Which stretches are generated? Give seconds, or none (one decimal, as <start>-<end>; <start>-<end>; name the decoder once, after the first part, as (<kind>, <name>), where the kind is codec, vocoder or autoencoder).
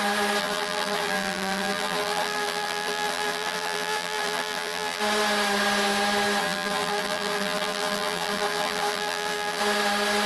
0.4-5.0 (vocoder, BigVGAN v2); 6.4-9.6